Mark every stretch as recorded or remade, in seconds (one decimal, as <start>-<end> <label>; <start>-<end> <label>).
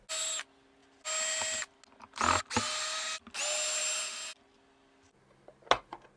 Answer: 0.0-6.2 recorded